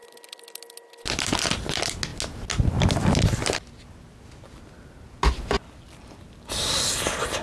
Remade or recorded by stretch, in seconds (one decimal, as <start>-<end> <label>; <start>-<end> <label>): 0.0-7.4 recorded